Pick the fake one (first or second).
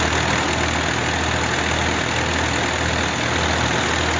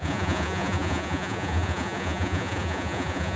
second